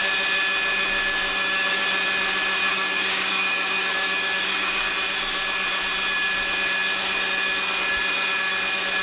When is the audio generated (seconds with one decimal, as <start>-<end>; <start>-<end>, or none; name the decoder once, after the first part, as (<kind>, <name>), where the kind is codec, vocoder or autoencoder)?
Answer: 1.2-1.8 (codec, DAC); 2.6-4.9